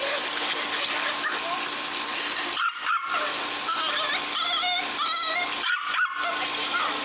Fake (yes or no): no